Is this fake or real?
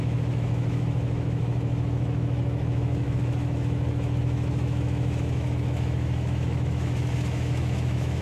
fake